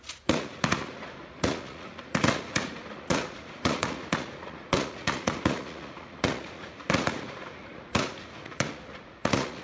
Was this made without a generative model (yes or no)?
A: no